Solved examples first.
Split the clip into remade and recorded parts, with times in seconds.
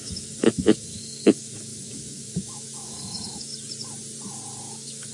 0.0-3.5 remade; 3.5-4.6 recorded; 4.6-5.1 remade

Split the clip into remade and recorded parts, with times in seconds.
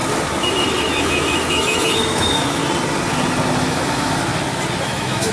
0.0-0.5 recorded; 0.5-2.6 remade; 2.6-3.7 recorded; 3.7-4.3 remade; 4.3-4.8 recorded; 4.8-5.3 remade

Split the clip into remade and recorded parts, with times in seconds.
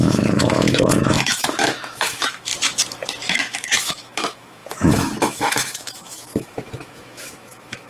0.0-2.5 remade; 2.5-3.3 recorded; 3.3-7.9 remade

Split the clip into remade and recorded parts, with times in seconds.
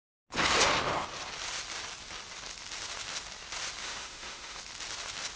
0.0-3.8 recorded; 3.8-4.6 remade; 4.6-5.4 recorded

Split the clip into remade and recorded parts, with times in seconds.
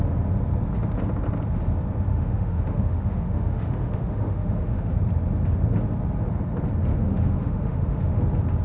0.0-2.1 recorded; 2.1-4.9 remade; 4.9-6.9 recorded; 6.9-8.2 remade; 8.2-8.6 recorded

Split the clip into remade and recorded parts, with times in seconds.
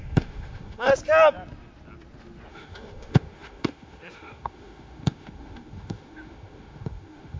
0.0-0.9 remade; 0.9-2.5 recorded; 2.5-7.4 remade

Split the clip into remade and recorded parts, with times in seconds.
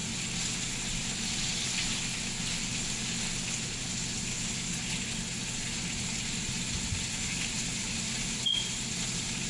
0.0-9.5 recorded